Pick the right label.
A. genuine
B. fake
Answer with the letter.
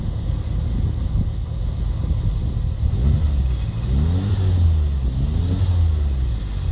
A